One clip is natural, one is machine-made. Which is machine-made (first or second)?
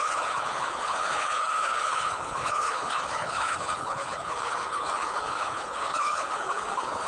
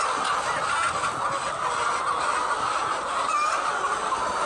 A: first